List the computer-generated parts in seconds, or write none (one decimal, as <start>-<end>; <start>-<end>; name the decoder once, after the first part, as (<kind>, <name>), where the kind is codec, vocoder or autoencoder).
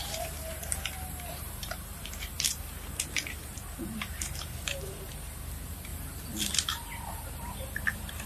0.0-5.9 (vocoder, BigVGAN v2); 6.5-8.3